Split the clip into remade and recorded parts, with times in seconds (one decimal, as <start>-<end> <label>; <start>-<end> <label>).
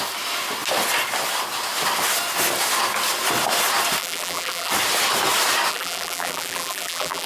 0.0-4.0 recorded; 4.0-4.7 remade; 4.7-5.7 recorded; 5.7-7.3 remade